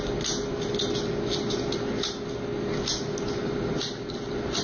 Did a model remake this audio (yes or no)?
no